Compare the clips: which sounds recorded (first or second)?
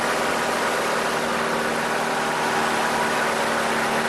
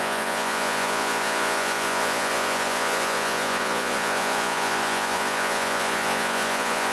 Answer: first